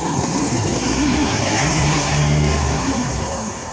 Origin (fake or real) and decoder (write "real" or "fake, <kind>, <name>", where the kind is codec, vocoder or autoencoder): fake, codec, SNAC